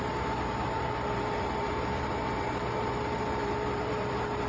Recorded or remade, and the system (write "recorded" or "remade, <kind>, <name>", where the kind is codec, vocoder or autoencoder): remade, vocoder, BigVGAN v2